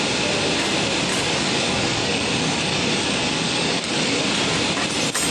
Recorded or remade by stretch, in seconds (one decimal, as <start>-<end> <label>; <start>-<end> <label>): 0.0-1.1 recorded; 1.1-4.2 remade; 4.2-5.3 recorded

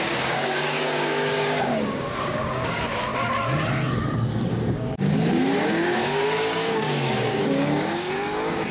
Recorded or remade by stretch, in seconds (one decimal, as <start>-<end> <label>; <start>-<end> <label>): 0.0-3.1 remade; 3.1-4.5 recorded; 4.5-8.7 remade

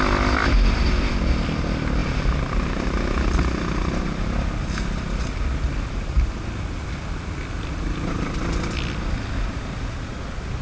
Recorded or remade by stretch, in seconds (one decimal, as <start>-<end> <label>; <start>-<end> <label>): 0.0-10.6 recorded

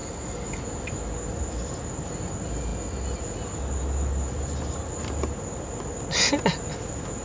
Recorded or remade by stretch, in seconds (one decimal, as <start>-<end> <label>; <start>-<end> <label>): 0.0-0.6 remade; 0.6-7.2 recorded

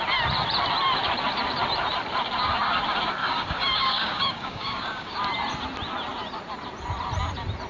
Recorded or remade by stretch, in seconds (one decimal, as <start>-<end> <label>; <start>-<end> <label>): 0.0-3.2 recorded; 3.2-5.2 remade; 5.2-7.7 recorded

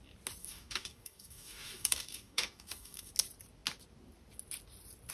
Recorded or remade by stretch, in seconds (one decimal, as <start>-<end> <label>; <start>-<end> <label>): 0.0-0.4 recorded; 0.4-3.1 remade; 3.1-5.1 recorded

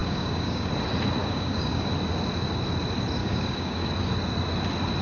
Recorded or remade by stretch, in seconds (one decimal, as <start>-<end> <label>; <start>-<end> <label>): 0.0-0.7 remade; 0.7-1.2 recorded; 1.2-1.9 remade; 1.9-3.2 recorded; 3.2-3.9 remade; 3.9-5.0 recorded